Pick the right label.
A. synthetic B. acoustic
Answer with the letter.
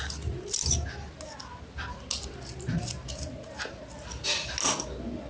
B